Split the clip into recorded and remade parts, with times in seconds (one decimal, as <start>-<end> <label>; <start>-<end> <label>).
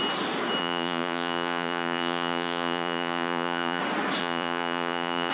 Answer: 0.0-0.6 recorded; 0.6-3.8 remade; 3.8-4.2 recorded; 4.2-5.3 remade